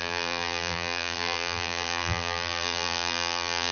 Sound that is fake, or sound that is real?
fake